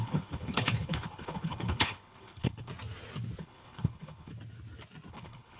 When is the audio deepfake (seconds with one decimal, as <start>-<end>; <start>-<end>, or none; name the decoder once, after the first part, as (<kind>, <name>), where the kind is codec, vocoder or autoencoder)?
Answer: 0.0-2.7 (codec, HILCodec); 3.4-4.3; 5.1-5.6